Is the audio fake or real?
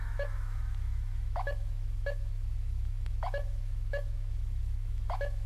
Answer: fake